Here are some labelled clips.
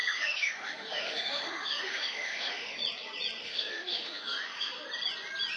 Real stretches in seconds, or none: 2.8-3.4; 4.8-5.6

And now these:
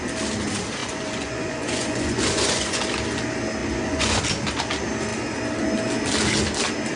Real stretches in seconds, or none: 0.0-0.8; 2.8-3.6; 4.2-7.0

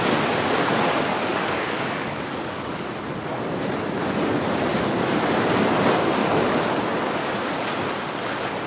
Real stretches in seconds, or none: 0.0-1.1; 2.7-6.2; 6.7-8.7

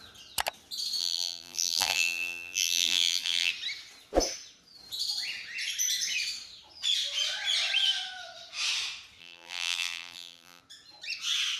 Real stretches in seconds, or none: 0.0-1.0; 3.5-9.2; 10.6-11.6

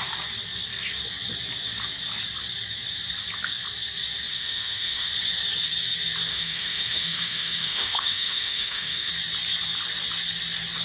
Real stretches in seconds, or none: 0.0-4.3; 5.1-6.3; 9.1-10.8